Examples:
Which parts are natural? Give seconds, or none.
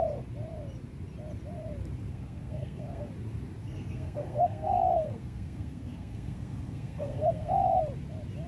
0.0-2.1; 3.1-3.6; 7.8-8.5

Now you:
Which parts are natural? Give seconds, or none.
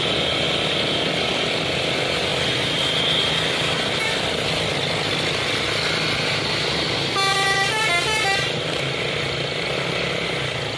0.0-10.8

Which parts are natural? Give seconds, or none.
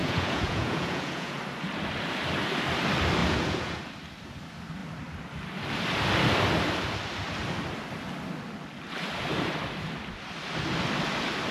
1.4-3.2; 3.8-11.5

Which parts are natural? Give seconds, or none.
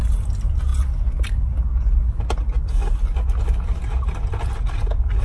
0.0-5.2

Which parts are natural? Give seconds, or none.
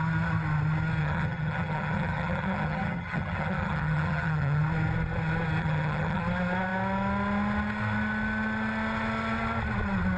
0.0-1.0; 4.6-5.6; 6.2-10.2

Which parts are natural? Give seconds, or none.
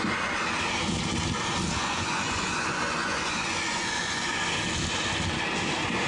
0.0-1.8; 4.4-6.1